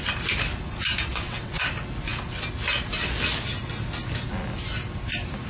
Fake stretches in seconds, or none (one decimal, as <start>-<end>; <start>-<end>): 1.1-1.7